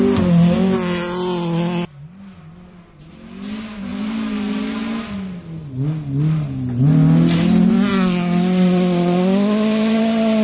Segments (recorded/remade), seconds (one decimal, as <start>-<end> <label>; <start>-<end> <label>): 0.0-10.4 recorded